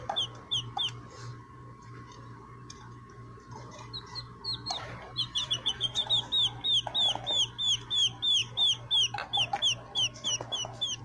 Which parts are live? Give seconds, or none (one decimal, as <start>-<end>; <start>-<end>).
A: 0.0-1.3; 6.1-11.0